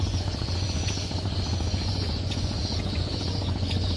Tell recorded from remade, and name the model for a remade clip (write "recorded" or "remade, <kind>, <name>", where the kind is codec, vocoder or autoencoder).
remade, vocoder, Vocos